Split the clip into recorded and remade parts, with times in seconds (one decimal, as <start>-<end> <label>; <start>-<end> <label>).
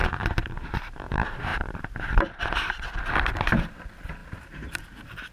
0.0-5.3 remade